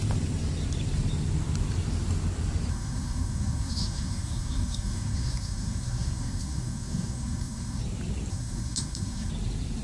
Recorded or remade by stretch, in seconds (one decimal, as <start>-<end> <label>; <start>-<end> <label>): 0.0-2.7 recorded; 2.7-7.8 remade; 7.8-8.3 recorded; 8.3-9.3 remade; 9.3-9.8 recorded

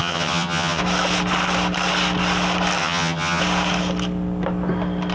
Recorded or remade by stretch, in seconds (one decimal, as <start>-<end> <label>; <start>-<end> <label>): 0.0-0.8 remade; 0.8-2.8 recorded; 2.8-3.4 remade; 3.4-5.1 recorded

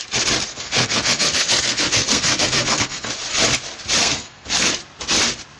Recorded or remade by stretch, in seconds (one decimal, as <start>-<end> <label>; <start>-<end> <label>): 0.0-0.5 recorded; 0.5-3.1 remade; 3.1-4.0 recorded; 4.0-4.7 remade; 4.7-5.6 recorded

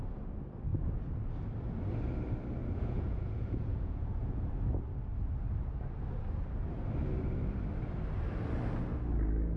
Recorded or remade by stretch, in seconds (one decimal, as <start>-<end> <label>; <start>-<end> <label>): 0.0-2.6 recorded; 2.6-4.5 remade; 4.5-9.6 recorded

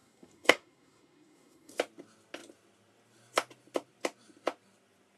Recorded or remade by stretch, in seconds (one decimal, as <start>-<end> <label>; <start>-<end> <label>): 0.0-1.7 remade; 1.7-5.2 recorded

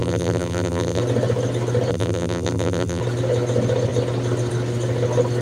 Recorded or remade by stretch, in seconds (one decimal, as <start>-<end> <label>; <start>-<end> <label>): 0.0-1.0 remade; 1.0-1.9 recorded; 1.9-3.0 remade; 3.0-5.4 recorded

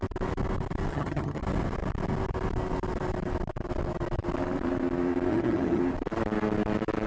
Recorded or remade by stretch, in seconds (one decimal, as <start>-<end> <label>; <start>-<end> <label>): 0.0-0.9 recorded; 0.9-1.4 remade; 1.4-5.3 recorded; 5.3-5.8 remade; 5.8-7.1 recorded

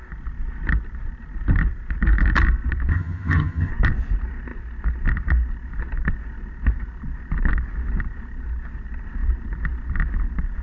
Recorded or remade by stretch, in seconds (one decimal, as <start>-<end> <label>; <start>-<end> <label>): 0.0-2.9 recorded; 2.9-3.7 remade; 3.7-10.6 recorded